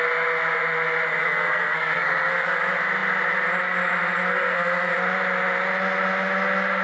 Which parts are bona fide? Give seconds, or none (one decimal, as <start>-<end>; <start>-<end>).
0.0-1.2; 2.6-4.3; 4.9-6.8